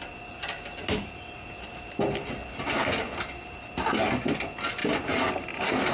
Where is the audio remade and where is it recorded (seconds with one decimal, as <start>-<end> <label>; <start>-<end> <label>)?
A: 0.0-5.9 recorded